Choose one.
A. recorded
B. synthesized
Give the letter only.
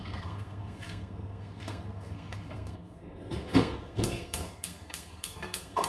B